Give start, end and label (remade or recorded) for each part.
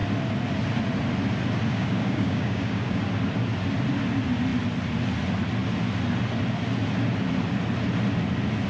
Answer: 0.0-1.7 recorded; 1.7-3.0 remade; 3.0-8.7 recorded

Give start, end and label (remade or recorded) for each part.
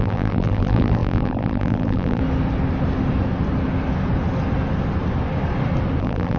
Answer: 0.0-2.2 remade; 2.2-6.0 recorded; 6.0-6.4 remade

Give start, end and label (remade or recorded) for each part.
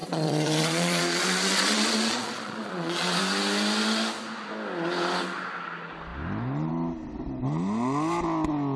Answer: 0.0-3.2 remade; 3.2-8.8 recorded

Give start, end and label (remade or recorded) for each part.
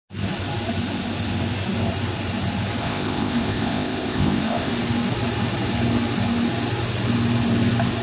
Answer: 0.0-2.8 recorded; 2.8-4.7 remade; 4.7-8.0 recorded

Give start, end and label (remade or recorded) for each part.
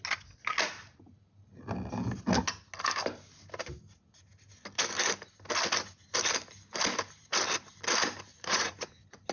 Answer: 0.0-8.3 recorded; 8.3-8.9 remade; 8.9-9.3 recorded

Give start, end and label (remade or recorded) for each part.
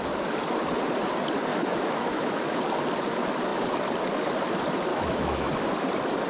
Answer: 0.0-1.5 recorded; 1.5-2.6 remade; 2.6-4.9 recorded; 4.9-5.6 remade; 5.6-6.3 recorded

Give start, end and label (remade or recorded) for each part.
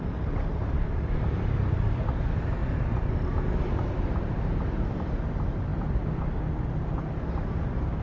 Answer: 0.0-8.0 recorded